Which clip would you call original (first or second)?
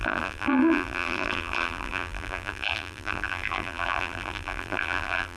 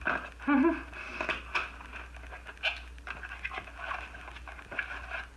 second